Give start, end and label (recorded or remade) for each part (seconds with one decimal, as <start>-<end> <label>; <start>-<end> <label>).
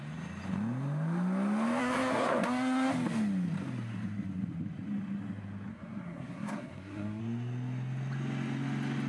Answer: 0.0-1.8 recorded; 1.8-2.9 remade; 2.9-5.7 recorded; 5.7-7.2 remade; 7.2-9.1 recorded